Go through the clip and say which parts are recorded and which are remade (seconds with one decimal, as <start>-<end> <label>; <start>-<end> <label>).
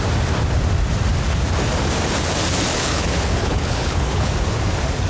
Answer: 0.0-2.7 recorded; 2.7-4.3 remade; 4.3-5.1 recorded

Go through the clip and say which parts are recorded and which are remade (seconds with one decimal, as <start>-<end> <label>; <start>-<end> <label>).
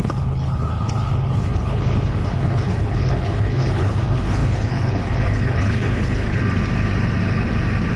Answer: 0.0-6.4 remade; 6.4-8.0 recorded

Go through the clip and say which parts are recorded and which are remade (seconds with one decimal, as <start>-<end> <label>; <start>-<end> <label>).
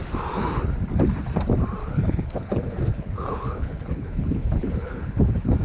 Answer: 0.0-1.8 recorded; 1.8-5.6 remade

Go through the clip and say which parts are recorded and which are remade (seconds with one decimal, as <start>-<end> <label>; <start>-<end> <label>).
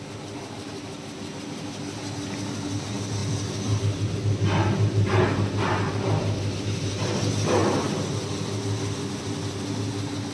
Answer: 0.0-10.3 recorded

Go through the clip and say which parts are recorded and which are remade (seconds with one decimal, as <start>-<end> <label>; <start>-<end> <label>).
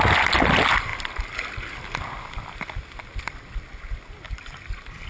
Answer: 0.0-5.1 recorded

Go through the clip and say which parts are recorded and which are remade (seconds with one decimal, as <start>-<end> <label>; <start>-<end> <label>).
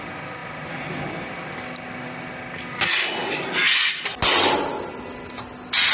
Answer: 0.0-5.9 recorded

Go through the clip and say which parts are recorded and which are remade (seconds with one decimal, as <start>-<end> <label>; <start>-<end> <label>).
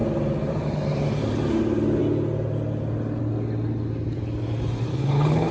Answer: 0.0-4.9 recorded; 4.9-5.5 remade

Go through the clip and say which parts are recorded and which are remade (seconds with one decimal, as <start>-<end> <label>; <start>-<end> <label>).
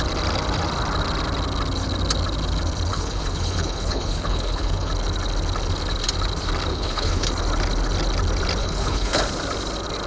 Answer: 0.0-2.9 recorded; 2.9-4.9 remade; 4.9-6.7 recorded; 6.7-7.3 remade; 7.3-8.6 recorded; 8.6-9.2 remade; 9.2-10.1 recorded